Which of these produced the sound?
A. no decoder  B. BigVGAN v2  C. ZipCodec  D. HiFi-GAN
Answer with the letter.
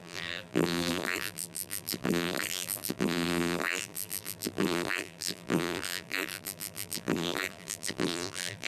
B